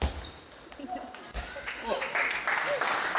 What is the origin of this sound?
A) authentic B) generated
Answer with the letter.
A